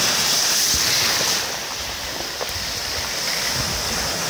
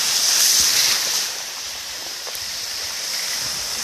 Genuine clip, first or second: first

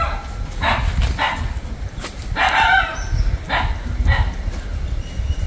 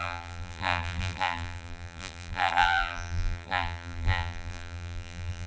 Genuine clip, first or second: first